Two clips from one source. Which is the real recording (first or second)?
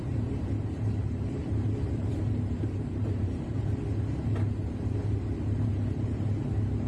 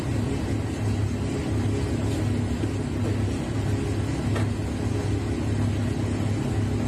second